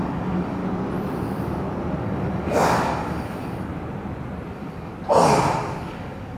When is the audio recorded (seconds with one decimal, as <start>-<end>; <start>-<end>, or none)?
0.6-2.0; 3.7-4.5; 4.9-5.9

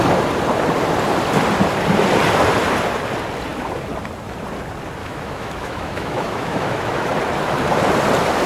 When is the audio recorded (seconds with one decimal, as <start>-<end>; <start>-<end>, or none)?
0.0-5.0; 7.1-8.5

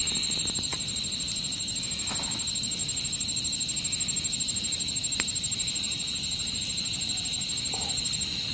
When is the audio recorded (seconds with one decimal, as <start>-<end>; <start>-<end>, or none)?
0.0-8.5

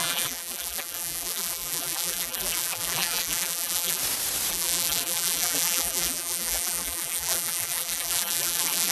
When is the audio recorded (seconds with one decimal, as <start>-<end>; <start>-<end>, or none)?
4.0-4.5

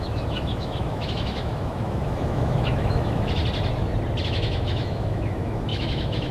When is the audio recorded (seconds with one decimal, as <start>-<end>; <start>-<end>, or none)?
3.4-4.2